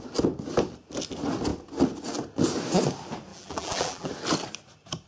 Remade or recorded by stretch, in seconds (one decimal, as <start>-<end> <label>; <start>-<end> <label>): 0.0-3.3 recorded; 3.3-4.1 remade; 4.1-5.1 recorded